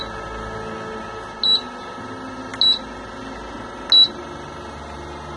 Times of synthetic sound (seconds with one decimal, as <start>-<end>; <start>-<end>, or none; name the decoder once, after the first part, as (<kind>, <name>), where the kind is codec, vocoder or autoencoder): none